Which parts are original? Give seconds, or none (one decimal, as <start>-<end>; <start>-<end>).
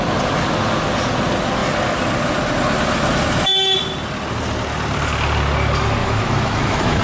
0.0-6.0